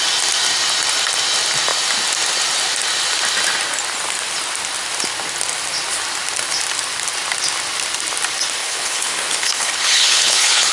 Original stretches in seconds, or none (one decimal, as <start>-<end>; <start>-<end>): 0.0-8.6